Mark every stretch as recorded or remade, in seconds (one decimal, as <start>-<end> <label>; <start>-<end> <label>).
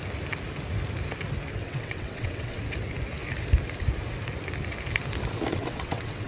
0.0-1.6 recorded; 1.6-2.6 remade; 2.6-5.5 recorded; 5.5-6.3 remade